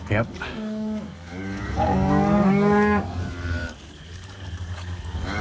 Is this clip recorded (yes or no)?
no